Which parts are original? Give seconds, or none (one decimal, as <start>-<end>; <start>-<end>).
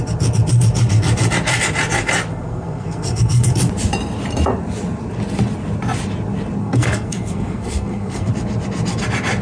0.0-2.3; 3.5-6.6; 8.3-9.4